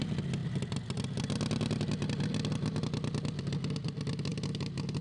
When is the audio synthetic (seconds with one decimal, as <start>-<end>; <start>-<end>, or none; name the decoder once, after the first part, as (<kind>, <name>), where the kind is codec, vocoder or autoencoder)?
none

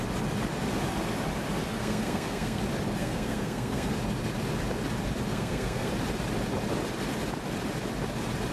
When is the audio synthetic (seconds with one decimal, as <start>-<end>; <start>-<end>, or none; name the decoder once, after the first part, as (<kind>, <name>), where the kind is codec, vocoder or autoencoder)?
1.8-2.6 (codec, SNAC); 3.0-3.9; 5.3-5.9